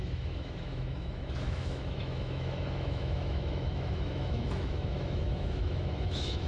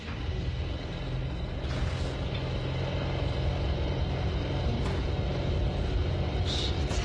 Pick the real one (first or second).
second